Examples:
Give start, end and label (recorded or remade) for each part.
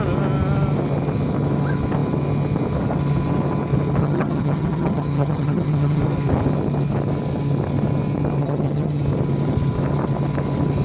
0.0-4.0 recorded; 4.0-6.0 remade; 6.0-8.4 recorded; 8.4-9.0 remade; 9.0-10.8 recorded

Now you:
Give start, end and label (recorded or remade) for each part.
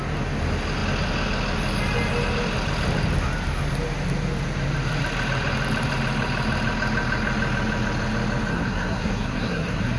0.0-8.5 recorded; 8.5-10.0 remade